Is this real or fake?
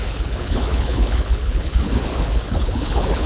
fake